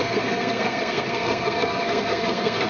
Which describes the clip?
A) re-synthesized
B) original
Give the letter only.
A